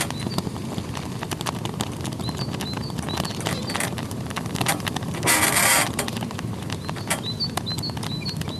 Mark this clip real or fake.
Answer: real